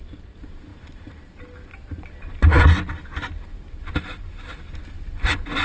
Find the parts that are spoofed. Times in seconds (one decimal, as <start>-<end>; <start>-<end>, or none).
none